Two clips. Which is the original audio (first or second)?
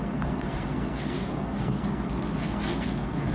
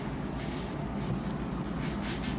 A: second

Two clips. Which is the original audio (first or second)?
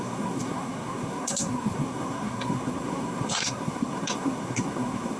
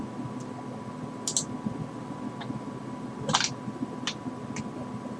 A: second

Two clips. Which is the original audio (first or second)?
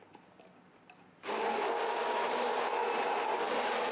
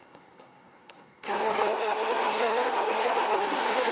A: first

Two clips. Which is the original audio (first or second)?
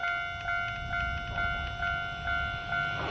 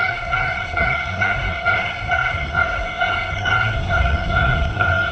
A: first